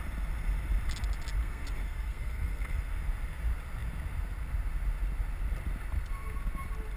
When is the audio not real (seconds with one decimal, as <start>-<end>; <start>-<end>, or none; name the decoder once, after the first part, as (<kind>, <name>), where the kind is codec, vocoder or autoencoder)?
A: 1.4-2.8 (codec, SNAC)